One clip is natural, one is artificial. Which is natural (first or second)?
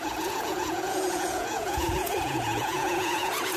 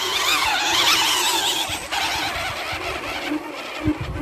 second